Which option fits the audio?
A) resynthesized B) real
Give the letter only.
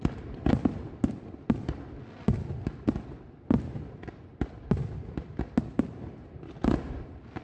B